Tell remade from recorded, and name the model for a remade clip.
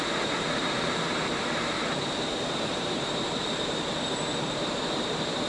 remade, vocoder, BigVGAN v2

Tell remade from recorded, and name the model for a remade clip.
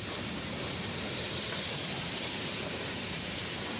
remade, vocoder, BigVGAN v2